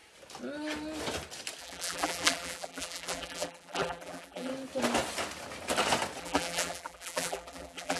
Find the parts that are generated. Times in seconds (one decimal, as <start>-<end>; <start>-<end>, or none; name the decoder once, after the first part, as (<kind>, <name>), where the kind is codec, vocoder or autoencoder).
1.6-4.5 (vocoder, BigVGAN v2); 6.2-8.0